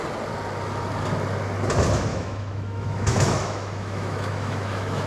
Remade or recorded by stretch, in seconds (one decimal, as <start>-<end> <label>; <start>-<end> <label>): 0.0-2.1 recorded; 2.1-5.1 remade